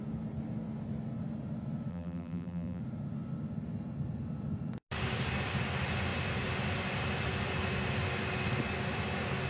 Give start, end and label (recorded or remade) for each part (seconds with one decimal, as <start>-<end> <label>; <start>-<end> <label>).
0.0-1.9 recorded; 1.9-2.8 remade; 2.8-9.5 recorded